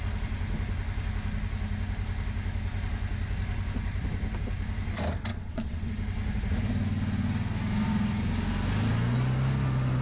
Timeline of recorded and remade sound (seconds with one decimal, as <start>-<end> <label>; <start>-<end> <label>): 0.0-5.3 recorded; 5.3-5.9 remade; 5.9-10.0 recorded